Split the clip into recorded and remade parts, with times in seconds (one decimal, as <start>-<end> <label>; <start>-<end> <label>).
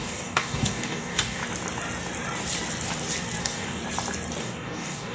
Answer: 0.0-1.4 remade; 1.4-3.4 recorded; 3.4-3.8 remade; 3.8-4.4 recorded; 4.4-5.1 remade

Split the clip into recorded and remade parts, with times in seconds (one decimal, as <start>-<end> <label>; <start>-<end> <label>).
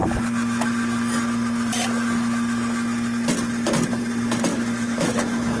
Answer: 0.0-4.5 recorded; 4.5-5.6 remade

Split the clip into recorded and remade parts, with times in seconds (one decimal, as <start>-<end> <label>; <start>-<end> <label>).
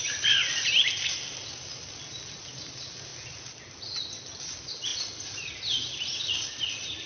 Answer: 0.0-7.1 recorded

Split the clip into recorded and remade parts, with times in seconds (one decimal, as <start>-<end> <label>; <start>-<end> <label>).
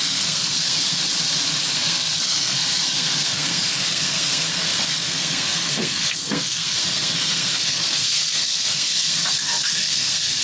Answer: 0.0-1.0 remade; 1.0-1.7 recorded; 1.7-10.4 remade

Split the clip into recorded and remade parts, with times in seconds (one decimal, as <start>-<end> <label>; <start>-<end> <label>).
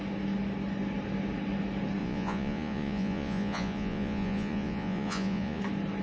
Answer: 0.0-2.0 recorded; 2.0-5.6 remade; 5.6-6.0 recorded